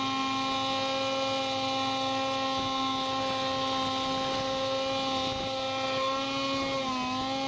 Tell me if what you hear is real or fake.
real